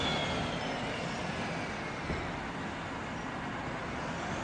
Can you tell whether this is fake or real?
real